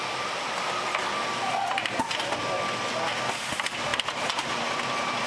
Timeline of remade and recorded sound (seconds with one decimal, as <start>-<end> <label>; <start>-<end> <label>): 0.0-1.5 remade; 1.5-3.5 recorded; 3.5-5.3 remade